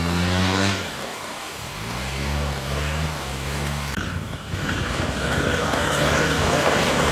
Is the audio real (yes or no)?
no